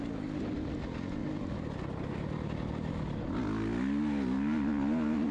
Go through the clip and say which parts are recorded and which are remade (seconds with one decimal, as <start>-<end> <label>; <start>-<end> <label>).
0.0-5.3 recorded